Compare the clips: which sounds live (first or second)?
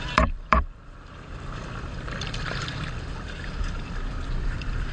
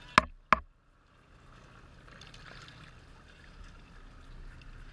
second